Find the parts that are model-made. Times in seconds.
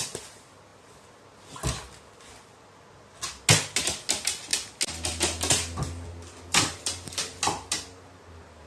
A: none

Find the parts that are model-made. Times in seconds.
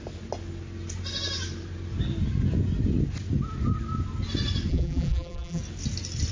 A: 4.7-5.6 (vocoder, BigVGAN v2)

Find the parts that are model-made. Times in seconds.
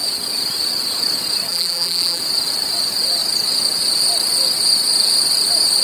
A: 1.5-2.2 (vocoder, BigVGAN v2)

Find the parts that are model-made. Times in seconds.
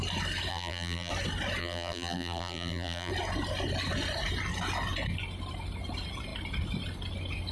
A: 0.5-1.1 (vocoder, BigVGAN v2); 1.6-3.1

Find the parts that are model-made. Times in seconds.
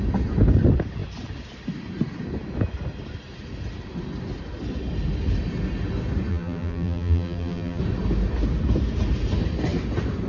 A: 6.3-7.8 (vocoder, BigVGAN v2)